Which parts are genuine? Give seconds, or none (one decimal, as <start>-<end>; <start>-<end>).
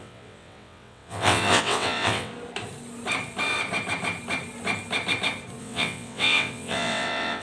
2.3-5.6